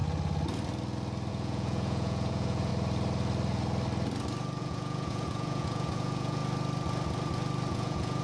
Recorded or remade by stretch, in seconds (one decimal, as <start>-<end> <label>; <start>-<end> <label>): 0.0-1.3 recorded; 1.3-2.7 remade; 2.7-4.6 recorded; 4.6-6.4 remade; 6.4-7.7 recorded; 7.7-8.2 remade